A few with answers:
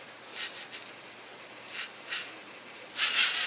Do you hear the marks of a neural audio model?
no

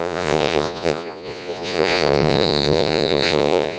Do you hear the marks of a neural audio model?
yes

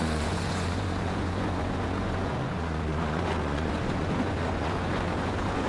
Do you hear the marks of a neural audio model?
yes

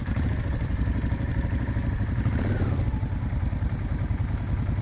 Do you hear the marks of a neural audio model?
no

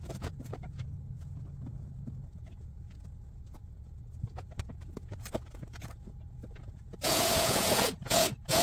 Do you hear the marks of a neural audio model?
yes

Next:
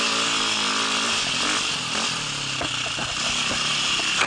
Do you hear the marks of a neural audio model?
no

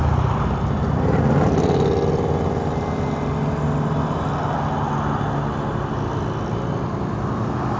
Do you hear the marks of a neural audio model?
no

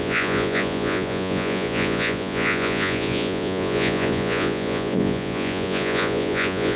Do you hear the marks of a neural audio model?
yes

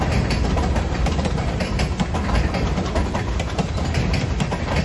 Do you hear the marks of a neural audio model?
no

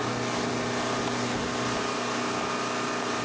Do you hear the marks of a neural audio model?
no